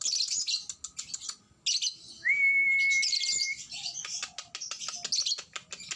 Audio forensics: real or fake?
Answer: real